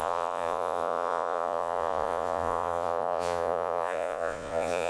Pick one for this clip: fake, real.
fake